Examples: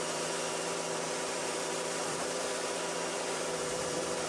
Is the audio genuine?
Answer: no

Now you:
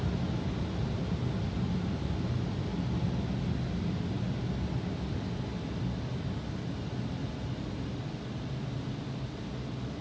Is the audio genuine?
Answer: yes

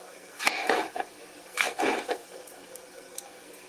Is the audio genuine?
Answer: no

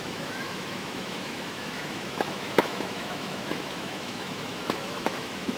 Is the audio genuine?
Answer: no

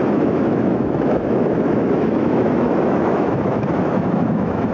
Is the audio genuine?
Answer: no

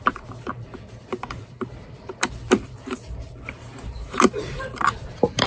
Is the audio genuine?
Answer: no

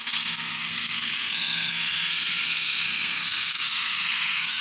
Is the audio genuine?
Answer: no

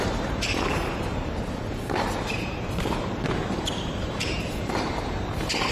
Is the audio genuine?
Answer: no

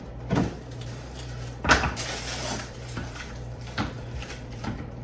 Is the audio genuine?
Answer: no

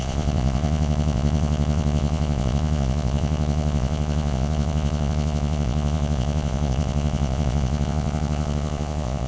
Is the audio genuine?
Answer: no